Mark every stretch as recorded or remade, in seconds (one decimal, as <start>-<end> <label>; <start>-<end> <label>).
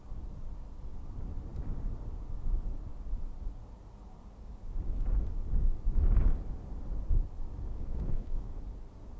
0.0-7.7 recorded; 7.7-8.6 remade; 8.6-9.2 recorded